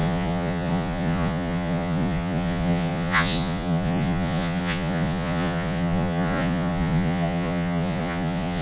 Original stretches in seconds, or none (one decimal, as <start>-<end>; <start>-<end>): none